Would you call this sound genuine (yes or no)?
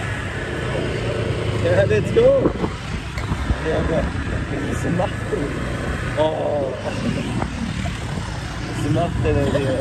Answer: yes